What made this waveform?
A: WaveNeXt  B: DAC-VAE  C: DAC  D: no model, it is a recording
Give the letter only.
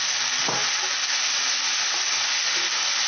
D